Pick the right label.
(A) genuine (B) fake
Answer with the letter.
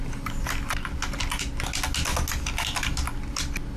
A